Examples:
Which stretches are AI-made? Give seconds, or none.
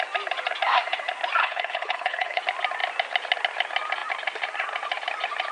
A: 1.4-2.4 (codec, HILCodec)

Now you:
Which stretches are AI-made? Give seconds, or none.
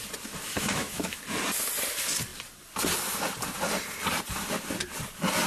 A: 0.5-1.2 (autoencoder, DAC-VAE)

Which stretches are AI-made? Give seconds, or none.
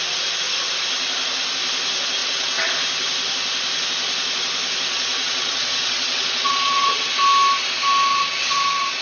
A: 2.2-2.7 (vocoder, WaveNeXt); 4.9-7.1; 8.1-9.0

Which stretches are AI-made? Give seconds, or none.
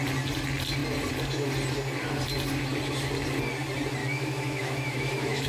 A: 4.0-5.5 (autoencoder, DAC-VAE)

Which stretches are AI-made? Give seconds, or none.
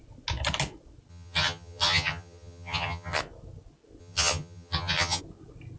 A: 1.1-3.2 (vocoder, HiFi-GAN); 4.0-5.2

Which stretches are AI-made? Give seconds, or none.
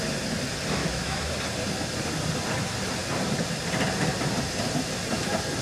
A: 0.8-1.3 (autoencoder, DAC-VAE)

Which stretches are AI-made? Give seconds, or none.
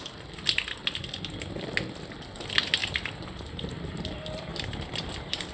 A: 2.8-3.7 (vocoder, BigVGAN v2); 4.5-5.5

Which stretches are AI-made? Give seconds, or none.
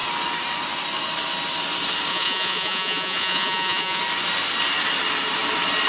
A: 2.1-4.0 (vocoder, Vocos)